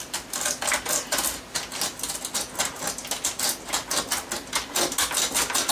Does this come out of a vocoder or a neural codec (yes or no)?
no